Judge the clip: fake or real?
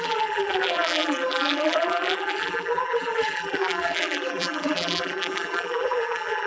fake